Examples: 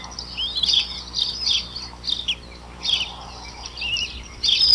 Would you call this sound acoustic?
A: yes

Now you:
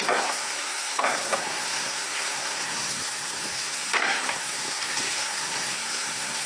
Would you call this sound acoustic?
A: no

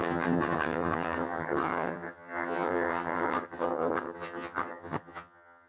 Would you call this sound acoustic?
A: no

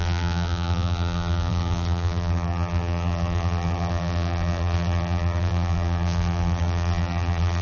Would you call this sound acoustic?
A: no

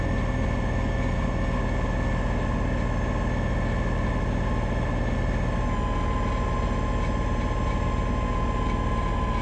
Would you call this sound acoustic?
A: yes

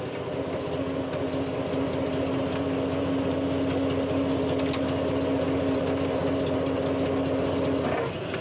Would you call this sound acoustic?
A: yes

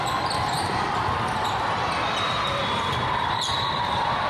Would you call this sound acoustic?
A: no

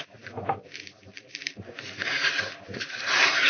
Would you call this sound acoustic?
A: no